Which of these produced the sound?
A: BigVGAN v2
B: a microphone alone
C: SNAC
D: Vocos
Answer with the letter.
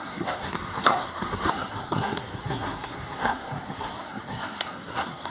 C